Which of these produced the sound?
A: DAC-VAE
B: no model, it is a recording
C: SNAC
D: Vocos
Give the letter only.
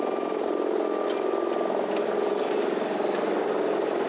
B